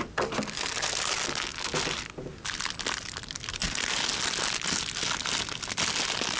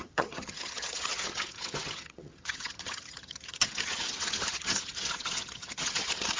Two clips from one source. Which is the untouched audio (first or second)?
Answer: first